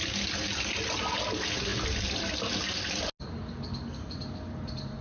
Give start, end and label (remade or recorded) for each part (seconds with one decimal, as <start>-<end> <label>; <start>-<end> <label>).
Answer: 0.0-5.0 recorded